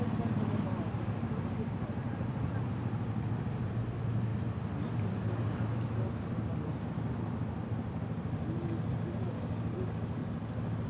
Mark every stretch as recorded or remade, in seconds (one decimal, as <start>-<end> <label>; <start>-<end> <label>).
0.0-2.0 recorded; 2.0-2.5 remade; 2.5-10.2 recorded; 10.2-10.9 remade